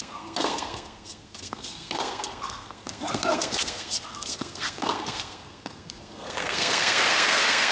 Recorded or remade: remade